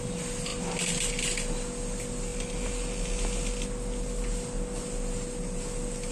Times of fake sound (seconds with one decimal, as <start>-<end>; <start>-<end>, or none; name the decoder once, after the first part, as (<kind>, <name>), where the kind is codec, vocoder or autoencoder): none